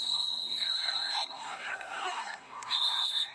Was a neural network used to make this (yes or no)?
yes